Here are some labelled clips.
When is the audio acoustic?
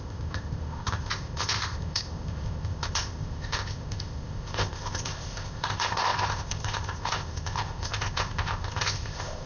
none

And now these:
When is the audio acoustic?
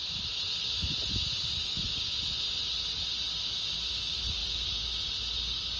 0.0-5.8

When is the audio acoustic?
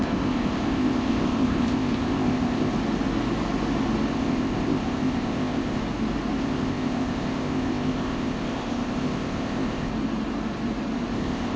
2.7-4.1; 5.8-6.4; 9.9-11.1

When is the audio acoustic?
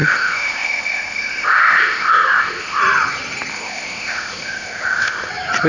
2.8-3.5; 5.3-5.7